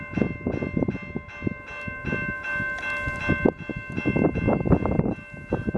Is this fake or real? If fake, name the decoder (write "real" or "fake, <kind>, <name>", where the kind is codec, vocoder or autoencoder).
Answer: real